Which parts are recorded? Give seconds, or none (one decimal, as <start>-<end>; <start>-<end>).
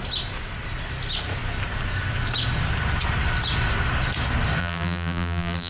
0.0-4.6